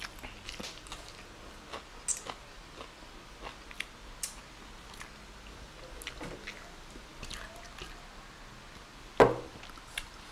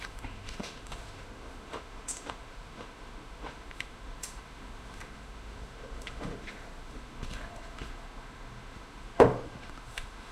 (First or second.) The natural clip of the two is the first